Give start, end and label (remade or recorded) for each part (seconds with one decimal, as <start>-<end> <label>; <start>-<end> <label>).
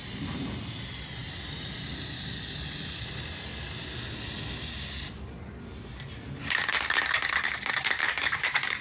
0.0-8.0 recorded; 8.0-8.8 remade